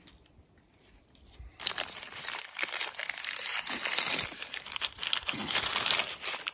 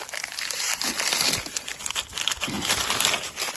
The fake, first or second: first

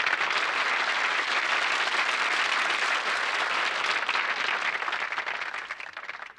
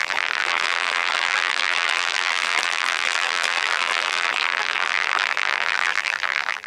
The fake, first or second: second